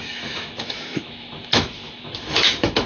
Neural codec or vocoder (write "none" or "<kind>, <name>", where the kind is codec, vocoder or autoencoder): autoencoder, DAC-VAE